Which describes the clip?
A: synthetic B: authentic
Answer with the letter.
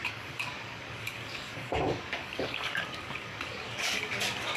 A